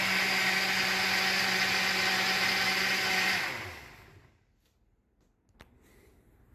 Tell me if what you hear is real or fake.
real